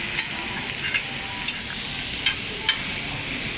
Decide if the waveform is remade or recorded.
recorded